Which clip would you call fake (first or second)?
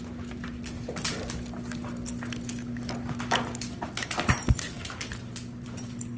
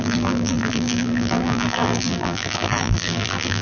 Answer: second